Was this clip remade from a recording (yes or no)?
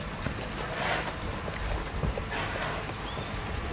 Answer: no